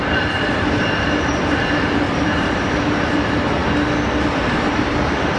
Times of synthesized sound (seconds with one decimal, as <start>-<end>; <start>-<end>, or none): 0.0-3.6; 4.3-5.4